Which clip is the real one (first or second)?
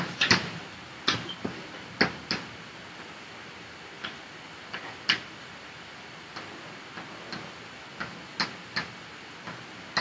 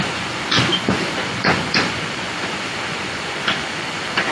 first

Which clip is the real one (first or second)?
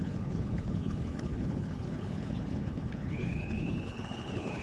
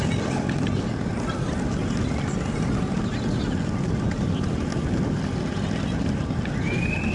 second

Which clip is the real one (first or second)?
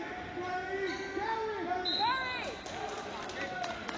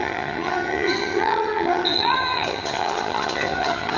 first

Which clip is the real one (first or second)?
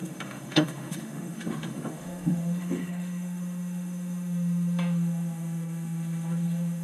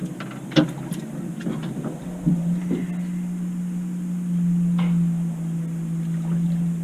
second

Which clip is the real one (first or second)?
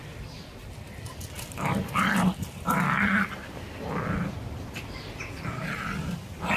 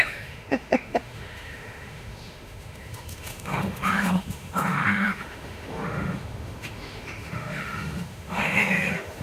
first